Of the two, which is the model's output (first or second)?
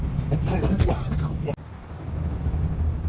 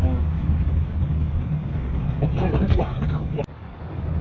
second